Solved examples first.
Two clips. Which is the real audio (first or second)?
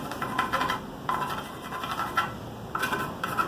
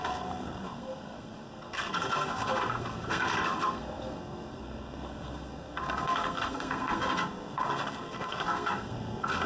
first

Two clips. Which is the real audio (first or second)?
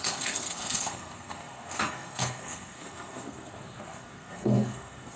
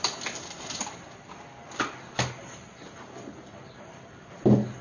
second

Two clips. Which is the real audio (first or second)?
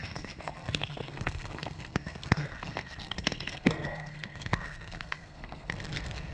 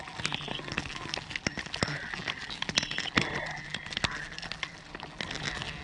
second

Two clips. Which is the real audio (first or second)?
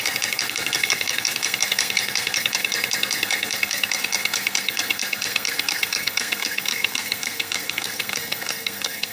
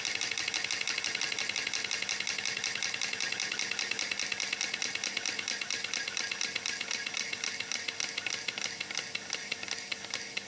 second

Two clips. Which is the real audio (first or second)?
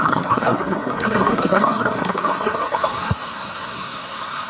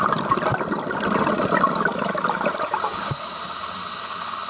second